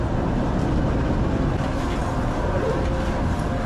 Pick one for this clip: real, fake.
real